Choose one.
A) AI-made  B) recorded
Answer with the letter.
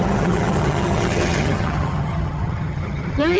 A